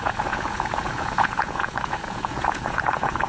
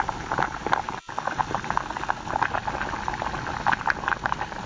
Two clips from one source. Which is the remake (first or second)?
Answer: first